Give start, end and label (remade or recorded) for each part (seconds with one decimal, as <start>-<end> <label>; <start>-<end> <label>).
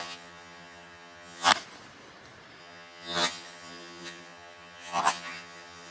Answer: 0.0-1.5 remade; 1.5-2.6 recorded; 2.6-5.9 remade